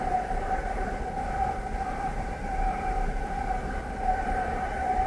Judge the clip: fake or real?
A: fake